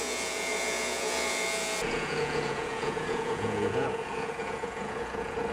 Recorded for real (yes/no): no